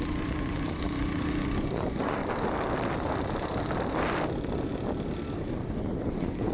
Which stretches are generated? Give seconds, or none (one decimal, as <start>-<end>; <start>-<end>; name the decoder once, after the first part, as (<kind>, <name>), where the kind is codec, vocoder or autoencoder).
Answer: 0.0-2.2 (vocoder, Vocos); 6.1-6.5